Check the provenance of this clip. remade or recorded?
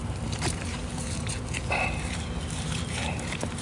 remade